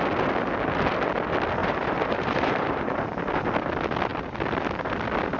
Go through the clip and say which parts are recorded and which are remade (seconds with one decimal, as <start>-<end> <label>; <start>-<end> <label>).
0.0-1.6 recorded; 1.6-3.4 remade; 3.4-5.4 recorded